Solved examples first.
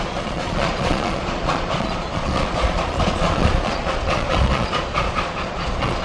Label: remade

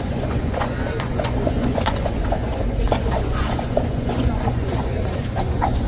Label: remade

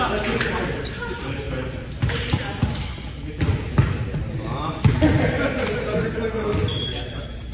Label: recorded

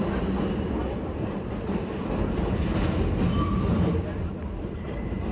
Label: recorded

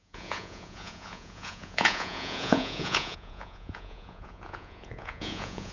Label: remade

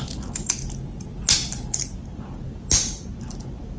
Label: recorded